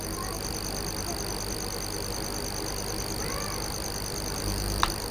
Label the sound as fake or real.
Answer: real